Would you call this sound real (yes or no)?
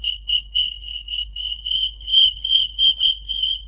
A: no